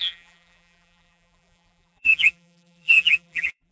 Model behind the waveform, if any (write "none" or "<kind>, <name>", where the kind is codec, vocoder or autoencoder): vocoder, BigVGAN v2